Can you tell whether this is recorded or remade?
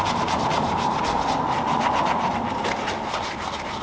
recorded